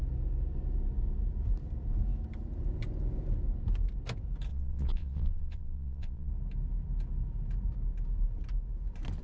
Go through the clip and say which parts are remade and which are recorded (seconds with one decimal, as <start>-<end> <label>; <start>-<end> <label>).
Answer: 0.0-4.5 recorded; 4.5-6.3 remade; 6.3-9.2 recorded